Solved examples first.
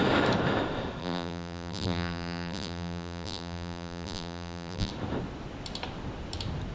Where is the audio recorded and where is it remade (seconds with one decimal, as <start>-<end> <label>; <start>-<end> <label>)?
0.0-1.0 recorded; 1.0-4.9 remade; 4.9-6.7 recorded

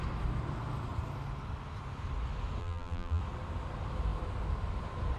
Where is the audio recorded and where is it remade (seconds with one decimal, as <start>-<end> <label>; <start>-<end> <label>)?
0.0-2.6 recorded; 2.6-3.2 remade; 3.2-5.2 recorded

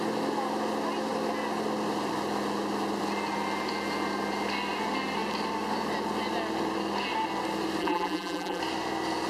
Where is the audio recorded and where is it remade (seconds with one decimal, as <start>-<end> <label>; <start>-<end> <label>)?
0.0-7.8 recorded; 7.8-8.6 remade; 8.6-9.3 recorded

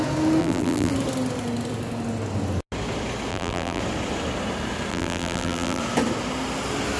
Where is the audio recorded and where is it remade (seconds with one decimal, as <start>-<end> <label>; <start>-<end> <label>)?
0.0-0.4 recorded; 0.4-0.9 remade; 0.9-3.3 recorded; 3.3-3.8 remade; 3.8-4.9 recorded; 4.9-5.8 remade; 5.8-7.0 recorded

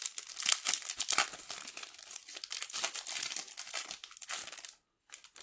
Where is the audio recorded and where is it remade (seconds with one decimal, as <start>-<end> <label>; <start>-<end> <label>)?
0.0-4.4 remade; 4.4-5.0 recorded; 5.0-5.4 remade